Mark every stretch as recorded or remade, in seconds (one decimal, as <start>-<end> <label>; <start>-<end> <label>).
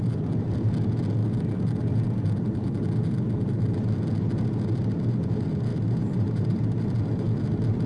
0.0-5.7 recorded; 5.7-6.8 remade; 6.8-7.9 recorded